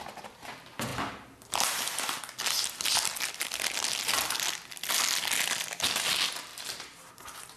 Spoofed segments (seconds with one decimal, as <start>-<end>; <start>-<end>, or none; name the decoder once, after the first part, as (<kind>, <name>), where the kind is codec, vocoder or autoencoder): none

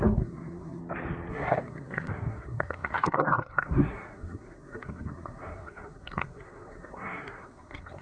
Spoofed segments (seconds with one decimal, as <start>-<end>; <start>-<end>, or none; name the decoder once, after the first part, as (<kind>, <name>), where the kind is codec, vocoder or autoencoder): 0.0-0.8 (codec, SNAC); 1.3-8.0

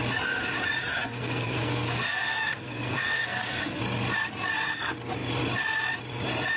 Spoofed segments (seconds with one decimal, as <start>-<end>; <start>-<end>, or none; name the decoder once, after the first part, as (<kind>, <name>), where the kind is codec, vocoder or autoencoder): 0.9-3.8 (codec, SNAC)

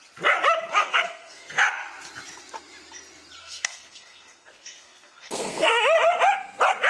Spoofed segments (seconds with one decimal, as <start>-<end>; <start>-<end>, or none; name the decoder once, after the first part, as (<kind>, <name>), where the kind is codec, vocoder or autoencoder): 0.8-1.6 (codec, SNAC); 3.4-5.7